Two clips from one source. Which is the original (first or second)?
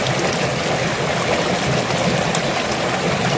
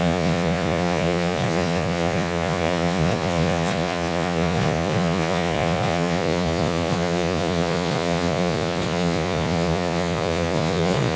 first